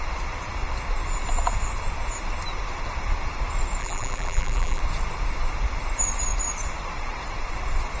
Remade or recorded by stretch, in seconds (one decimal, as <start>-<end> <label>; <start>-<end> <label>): 0.0-3.8 recorded; 3.8-4.8 remade; 4.8-8.0 recorded